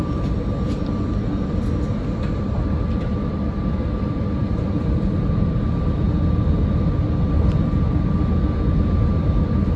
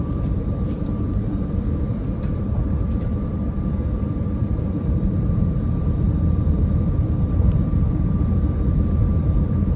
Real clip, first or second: first